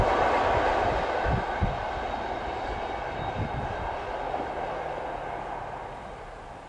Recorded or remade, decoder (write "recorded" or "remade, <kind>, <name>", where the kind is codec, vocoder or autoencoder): recorded